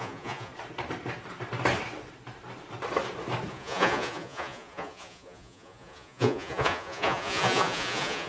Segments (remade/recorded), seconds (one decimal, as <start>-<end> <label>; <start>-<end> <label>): 0.0-0.5 remade; 0.5-3.5 recorded; 3.5-8.3 remade